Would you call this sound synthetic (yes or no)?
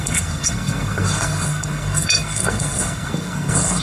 yes